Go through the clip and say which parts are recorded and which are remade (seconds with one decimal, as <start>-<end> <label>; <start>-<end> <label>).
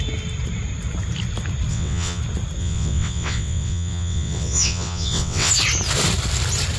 0.0-1.7 recorded; 1.7-2.2 remade; 2.2-2.6 recorded; 2.6-5.5 remade; 5.5-6.8 recorded